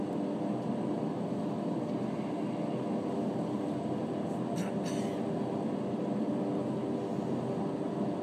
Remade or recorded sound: recorded